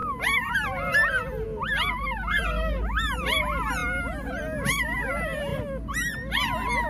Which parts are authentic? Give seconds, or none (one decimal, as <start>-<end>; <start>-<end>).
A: 0.0-6.9